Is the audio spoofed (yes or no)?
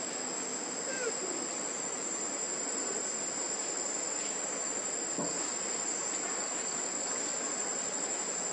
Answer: no